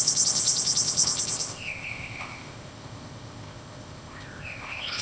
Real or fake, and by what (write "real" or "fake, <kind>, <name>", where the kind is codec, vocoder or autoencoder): fake, codec, ZipCodec